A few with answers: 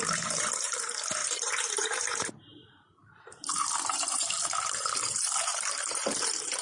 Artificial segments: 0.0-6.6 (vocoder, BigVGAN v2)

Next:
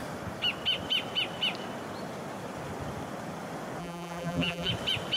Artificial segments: 3.8-4.7 (vocoder, BigVGAN v2)

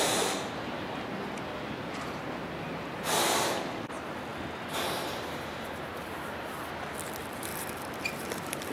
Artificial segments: 7.5-8.7 (vocoder, BigVGAN v2)